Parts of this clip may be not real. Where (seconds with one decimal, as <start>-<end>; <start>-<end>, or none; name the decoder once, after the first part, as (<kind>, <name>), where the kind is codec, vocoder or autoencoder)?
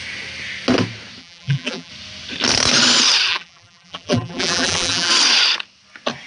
1.2-1.9 (vocoder, BigVGAN v2); 3.3-5.1